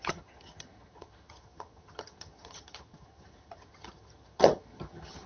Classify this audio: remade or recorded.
remade